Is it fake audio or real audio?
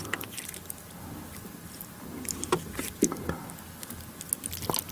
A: real